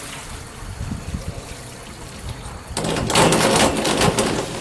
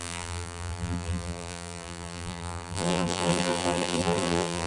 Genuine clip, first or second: first